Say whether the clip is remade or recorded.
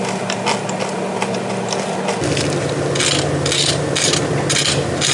recorded